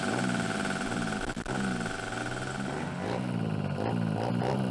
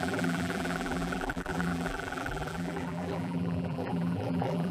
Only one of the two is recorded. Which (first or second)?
first